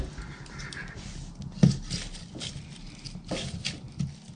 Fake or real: real